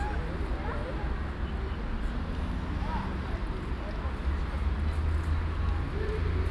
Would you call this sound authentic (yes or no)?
yes